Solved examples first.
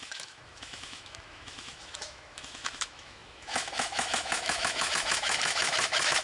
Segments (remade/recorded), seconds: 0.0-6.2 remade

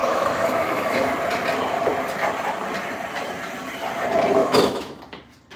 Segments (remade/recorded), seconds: 0.0-1.1 remade; 1.1-4.4 recorded; 4.4-5.0 remade; 5.0-5.6 recorded